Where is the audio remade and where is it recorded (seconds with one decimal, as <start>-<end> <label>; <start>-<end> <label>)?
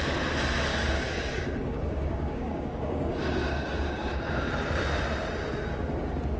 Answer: 0.0-0.7 recorded; 0.7-4.5 remade; 4.5-6.4 recorded